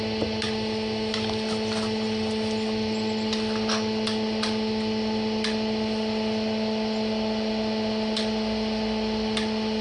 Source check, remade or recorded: recorded